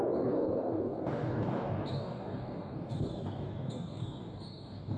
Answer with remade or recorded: remade